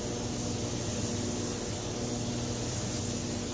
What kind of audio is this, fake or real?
real